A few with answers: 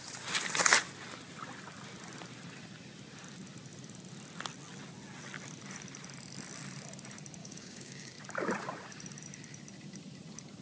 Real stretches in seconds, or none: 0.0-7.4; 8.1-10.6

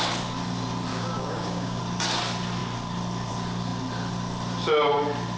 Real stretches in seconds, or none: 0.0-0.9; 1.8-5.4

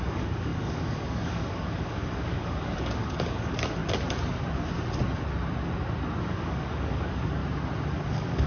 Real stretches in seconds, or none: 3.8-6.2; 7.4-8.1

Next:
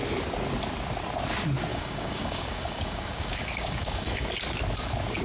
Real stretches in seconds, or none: 0.0-1.7; 4.3-5.2